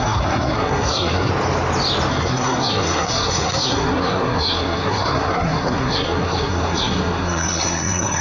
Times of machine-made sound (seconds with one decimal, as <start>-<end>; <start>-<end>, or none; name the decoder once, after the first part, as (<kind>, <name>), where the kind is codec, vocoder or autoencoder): 0.0-1.3 (codec, SNAC); 2.1-8.2